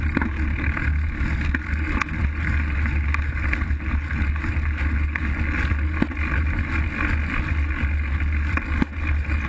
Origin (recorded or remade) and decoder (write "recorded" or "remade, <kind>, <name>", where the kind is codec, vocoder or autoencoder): recorded